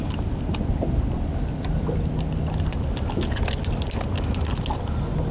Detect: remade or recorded recorded